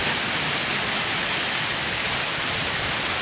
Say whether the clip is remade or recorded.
recorded